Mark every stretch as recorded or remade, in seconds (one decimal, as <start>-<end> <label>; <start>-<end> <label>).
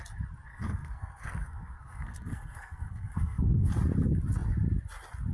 0.0-0.5 recorded; 0.5-3.7 remade; 3.7-5.3 recorded